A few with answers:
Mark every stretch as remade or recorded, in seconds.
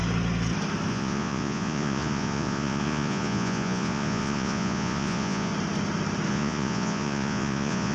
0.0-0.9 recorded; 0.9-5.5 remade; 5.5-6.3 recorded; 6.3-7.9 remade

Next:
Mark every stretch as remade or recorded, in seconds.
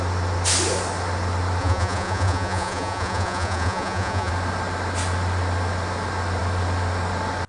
0.0-1.6 recorded; 1.6-4.3 remade; 4.3-7.5 recorded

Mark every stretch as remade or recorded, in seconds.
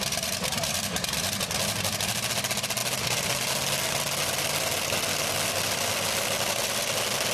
0.0-7.3 recorded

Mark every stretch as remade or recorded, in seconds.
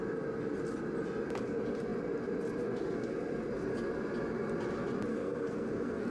0.0-5.1 recorded; 5.1-6.1 remade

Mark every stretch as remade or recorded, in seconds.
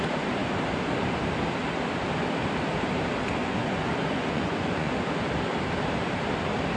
0.0-3.4 recorded; 3.4-5.0 remade; 5.0-6.8 recorded